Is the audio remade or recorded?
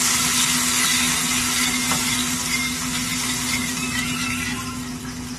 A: recorded